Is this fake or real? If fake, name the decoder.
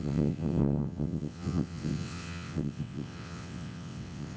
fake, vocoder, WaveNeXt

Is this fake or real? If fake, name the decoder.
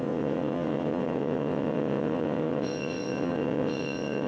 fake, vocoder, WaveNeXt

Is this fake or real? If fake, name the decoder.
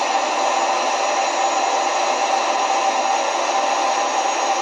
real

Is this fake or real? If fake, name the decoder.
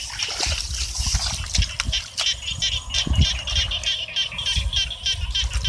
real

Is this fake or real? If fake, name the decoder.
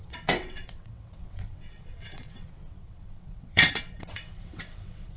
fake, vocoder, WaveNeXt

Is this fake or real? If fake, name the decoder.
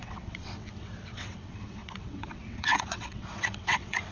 fake, vocoder, WaveNeXt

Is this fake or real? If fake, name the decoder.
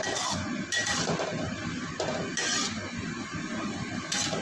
real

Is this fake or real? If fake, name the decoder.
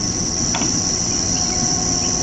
fake, vocoder, WaveNeXt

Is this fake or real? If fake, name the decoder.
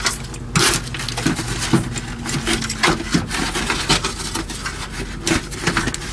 real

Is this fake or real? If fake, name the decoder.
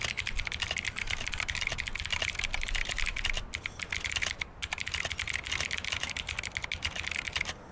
real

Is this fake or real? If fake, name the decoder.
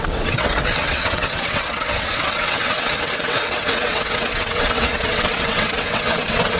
fake, vocoder, WaveNeXt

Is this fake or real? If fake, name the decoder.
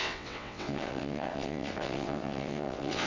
fake, vocoder, WaveNeXt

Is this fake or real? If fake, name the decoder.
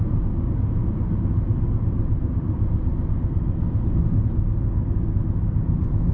real